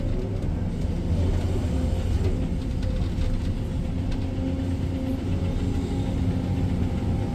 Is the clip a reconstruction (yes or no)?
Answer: no